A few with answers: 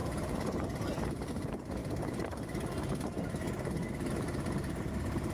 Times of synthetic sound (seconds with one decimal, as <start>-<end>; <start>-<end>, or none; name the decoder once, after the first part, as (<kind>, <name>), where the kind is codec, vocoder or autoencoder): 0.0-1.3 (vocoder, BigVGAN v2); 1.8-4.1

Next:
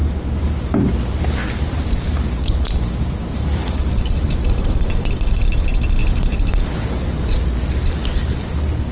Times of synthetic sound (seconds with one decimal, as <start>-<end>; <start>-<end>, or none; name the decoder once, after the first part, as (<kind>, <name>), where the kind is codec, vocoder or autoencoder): 0.0-0.9 (vocoder, BigVGAN v2); 1.7-4.9; 6.0-7.4

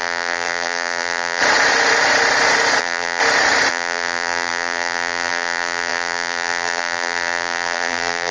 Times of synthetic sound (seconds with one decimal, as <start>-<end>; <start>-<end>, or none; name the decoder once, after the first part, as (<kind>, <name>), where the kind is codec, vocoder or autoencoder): 0.0-1.4 (vocoder, BigVGAN v2); 2.8-3.2; 3.7-8.3